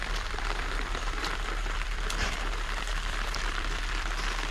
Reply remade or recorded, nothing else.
remade